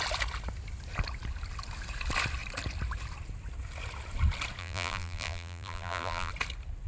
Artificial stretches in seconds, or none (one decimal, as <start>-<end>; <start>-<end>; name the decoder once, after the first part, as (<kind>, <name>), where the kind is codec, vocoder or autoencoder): 4.6-6.3 (vocoder, BigVGAN v2)